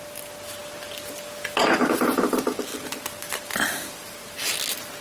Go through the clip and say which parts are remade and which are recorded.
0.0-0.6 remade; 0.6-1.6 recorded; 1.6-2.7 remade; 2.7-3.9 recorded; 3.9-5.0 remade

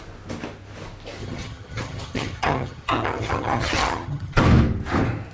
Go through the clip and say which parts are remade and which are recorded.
0.0-1.2 recorded; 1.2-4.4 remade; 4.4-5.3 recorded

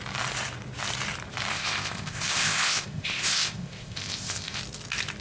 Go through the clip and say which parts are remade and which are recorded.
0.0-1.5 recorded; 1.5-4.6 remade; 4.6-5.2 recorded

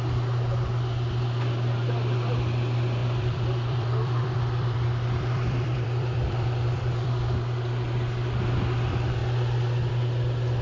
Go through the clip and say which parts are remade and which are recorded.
0.0-3.0 recorded; 3.0-7.1 remade; 7.1-10.6 recorded

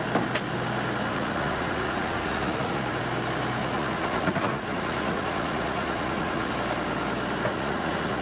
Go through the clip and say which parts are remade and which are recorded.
0.0-1.1 recorded; 1.1-3.0 remade; 3.0-3.6 recorded; 3.6-6.5 remade; 6.5-7.5 recorded; 7.5-8.2 remade